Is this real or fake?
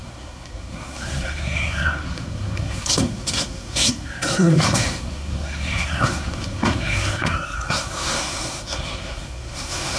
fake